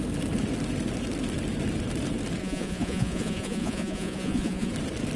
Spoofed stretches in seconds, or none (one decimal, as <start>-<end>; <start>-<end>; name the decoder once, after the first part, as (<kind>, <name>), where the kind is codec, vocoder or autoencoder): 2.4-4.7 (vocoder, Vocos)